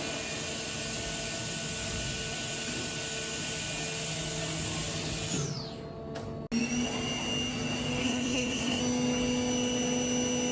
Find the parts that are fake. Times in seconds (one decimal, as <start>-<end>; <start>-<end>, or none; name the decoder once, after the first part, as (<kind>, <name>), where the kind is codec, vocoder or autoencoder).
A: 8.0-8.8 (codec, SNAC)